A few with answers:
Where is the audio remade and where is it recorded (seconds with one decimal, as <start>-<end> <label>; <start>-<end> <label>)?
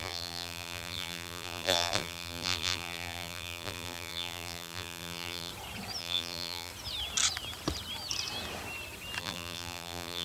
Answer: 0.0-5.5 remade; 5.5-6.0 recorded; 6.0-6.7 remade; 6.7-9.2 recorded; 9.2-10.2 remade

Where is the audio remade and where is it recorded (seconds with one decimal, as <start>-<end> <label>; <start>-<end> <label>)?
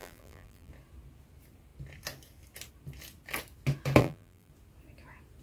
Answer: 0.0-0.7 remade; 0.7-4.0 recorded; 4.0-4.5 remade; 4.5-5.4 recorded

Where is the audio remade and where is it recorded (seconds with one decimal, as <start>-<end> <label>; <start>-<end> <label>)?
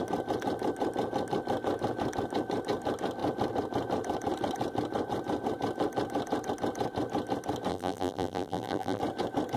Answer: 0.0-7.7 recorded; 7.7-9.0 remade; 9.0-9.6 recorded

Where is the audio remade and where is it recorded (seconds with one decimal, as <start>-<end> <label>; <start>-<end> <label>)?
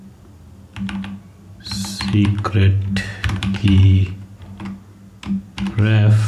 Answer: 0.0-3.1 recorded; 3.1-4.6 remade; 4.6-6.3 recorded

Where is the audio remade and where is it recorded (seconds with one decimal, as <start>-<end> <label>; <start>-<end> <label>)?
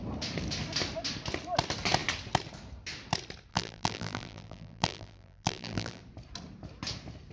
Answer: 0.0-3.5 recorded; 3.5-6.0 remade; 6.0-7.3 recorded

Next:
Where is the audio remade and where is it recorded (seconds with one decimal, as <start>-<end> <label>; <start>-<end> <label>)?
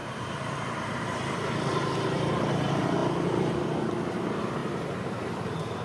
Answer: 0.0-2.3 remade; 2.3-4.6 recorded; 4.6-5.1 remade; 5.1-5.8 recorded